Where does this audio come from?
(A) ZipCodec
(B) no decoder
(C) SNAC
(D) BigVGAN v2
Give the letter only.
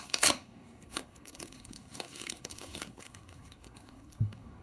C